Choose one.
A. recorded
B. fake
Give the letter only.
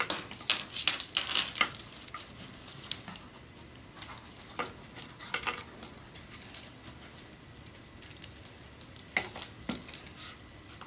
A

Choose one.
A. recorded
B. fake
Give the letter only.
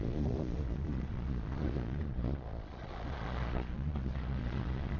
B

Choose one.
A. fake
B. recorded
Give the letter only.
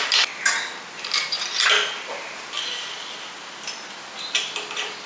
B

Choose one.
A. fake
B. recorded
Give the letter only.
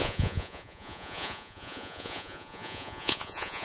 A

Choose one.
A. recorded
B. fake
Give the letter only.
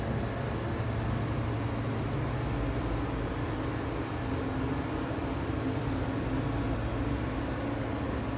A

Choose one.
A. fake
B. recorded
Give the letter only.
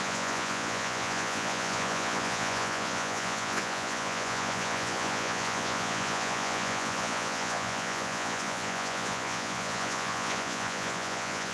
A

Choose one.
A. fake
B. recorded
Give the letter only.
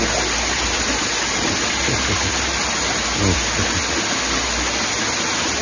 B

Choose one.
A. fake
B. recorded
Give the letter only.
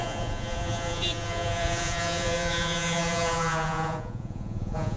A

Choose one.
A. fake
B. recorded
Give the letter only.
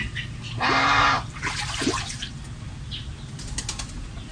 B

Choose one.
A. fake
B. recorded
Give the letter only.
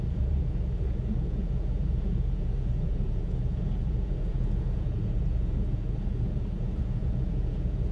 A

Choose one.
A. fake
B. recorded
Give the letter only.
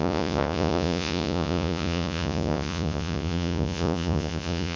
A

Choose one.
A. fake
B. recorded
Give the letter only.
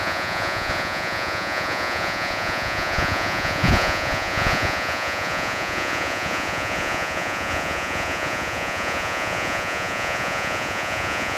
A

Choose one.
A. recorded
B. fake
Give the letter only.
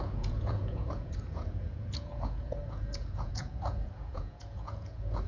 B